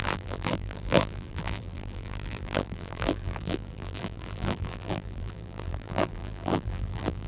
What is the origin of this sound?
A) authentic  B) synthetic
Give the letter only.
B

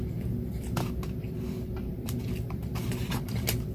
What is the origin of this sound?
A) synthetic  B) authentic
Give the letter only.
A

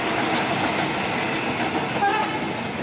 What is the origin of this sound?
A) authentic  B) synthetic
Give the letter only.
A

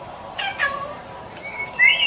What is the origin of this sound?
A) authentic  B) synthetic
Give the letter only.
B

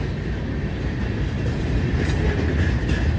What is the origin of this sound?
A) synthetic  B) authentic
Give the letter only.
A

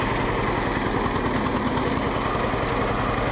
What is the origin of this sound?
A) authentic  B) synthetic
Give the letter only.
A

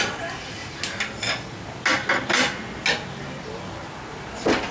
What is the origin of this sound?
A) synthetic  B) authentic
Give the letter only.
B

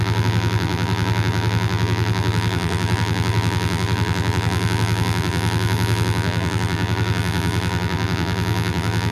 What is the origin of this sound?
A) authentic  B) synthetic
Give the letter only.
B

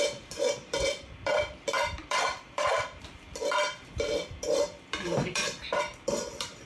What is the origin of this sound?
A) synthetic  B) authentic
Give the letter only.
A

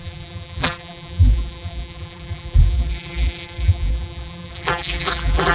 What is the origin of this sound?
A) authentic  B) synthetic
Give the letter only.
B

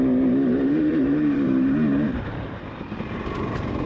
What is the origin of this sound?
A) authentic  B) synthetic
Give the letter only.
B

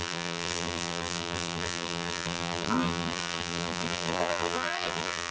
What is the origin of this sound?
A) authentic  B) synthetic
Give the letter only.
B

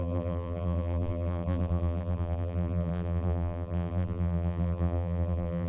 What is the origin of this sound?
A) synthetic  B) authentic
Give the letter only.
A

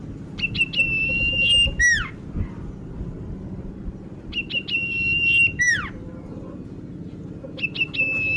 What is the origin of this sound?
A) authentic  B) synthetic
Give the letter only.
A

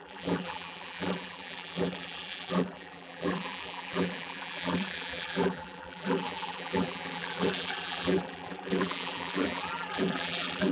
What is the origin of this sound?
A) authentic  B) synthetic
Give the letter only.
B